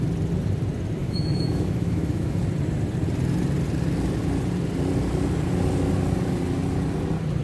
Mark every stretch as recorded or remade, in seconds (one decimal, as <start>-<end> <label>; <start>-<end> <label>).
0.0-1.0 recorded; 1.0-2.4 remade; 2.4-7.4 recorded